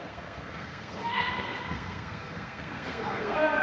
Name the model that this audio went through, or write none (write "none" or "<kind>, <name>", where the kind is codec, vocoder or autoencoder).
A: codec, SNAC